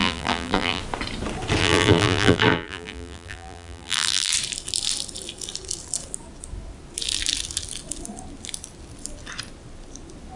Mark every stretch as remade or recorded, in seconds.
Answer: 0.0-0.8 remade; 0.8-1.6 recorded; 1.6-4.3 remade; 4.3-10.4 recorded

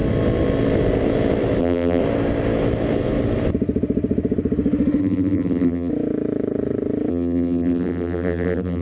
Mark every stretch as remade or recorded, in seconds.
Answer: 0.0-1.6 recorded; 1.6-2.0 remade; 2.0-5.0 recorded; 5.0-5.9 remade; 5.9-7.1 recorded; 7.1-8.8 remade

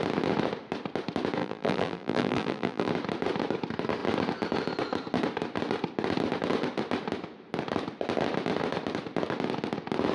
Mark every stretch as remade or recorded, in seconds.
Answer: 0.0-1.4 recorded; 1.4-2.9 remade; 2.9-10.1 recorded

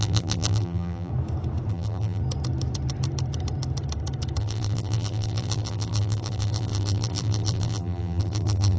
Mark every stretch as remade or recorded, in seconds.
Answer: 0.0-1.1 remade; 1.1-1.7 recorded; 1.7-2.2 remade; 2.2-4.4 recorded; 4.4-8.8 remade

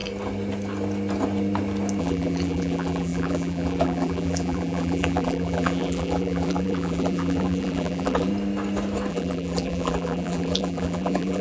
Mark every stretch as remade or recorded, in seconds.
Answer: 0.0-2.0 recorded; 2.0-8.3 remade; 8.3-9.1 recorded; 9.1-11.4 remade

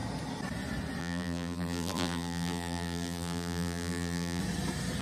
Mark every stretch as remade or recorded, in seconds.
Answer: 0.0-1.0 recorded; 1.0-4.4 remade; 4.4-5.0 recorded

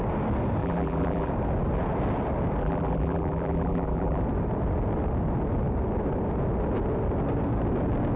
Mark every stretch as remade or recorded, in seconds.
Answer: 0.0-0.6 recorded; 0.6-1.3 remade; 1.3-2.6 recorded; 2.6-4.2 remade; 4.2-8.2 recorded

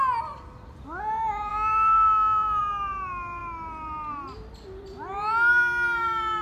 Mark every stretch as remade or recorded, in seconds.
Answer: 0.0-1.5 recorded; 1.5-2.6 remade; 2.6-6.4 recorded